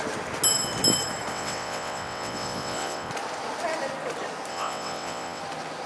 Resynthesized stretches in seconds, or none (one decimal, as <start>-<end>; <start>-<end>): 1.3-3.1; 4.5-5.4